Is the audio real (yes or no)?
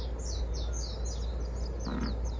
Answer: yes